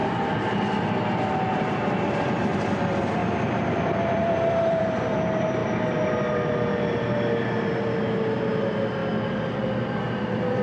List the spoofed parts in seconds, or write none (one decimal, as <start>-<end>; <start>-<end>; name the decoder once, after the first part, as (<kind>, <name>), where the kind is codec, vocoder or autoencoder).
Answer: 1.7-5.6 (vocoder, BigVGAN v2); 8.6-9.0; 9.8-10.6